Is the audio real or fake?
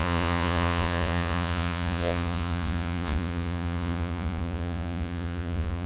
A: fake